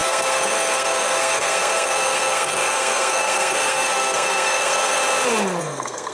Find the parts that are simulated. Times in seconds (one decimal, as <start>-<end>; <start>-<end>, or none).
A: 0.0-5.0; 5.6-6.1